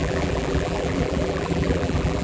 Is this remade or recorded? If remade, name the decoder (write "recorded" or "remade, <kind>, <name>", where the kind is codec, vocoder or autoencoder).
remade, vocoder, BigVGAN v2